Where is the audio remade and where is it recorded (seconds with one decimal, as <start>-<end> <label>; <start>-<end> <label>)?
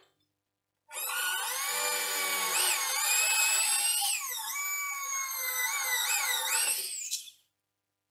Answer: 0.0-8.1 recorded